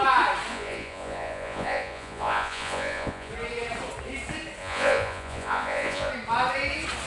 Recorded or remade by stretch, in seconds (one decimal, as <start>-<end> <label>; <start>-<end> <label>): 0.0-0.5 recorded; 0.5-3.3 remade; 3.3-4.6 recorded; 4.6-6.1 remade; 6.1-7.1 recorded

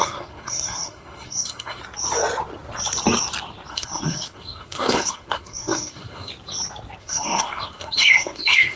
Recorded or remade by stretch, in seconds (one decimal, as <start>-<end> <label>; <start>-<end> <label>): 0.0-1.8 remade; 1.8-3.7 recorded; 3.7-6.3 remade; 6.3-7.0 recorded; 7.0-8.8 remade

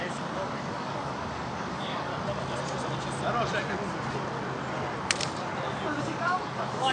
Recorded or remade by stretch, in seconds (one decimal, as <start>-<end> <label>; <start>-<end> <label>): 0.0-2.1 remade; 2.1-6.0 recorded; 6.0-6.9 remade

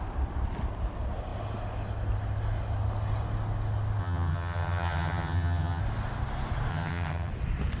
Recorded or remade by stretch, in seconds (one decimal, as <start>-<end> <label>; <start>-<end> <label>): 0.0-4.0 recorded; 4.0-5.8 remade; 5.8-6.7 recorded; 6.7-7.3 remade; 7.3-7.8 recorded

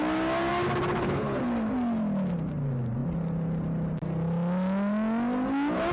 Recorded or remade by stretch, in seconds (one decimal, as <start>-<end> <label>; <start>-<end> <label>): 0.0-0.9 recorded; 0.9-1.4 remade; 1.4-5.9 recorded

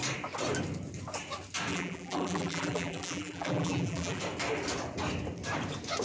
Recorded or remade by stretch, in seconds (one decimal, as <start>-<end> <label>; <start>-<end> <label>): 0.0-1.7 recorded; 1.7-4.2 remade; 4.2-6.0 recorded

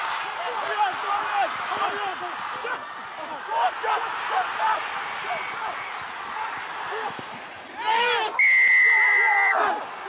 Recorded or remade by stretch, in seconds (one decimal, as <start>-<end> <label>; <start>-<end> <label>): 0.0-10.1 recorded